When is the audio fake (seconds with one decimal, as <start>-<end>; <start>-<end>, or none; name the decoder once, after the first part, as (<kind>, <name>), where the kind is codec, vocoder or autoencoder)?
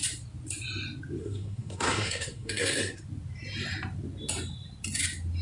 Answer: 1.2-3.0 (codec, SNAC)